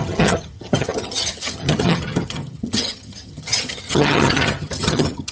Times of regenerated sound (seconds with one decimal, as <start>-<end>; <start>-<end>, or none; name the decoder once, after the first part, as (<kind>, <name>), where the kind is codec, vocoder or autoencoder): 0.0-5.3 (vocoder, HiFi-GAN)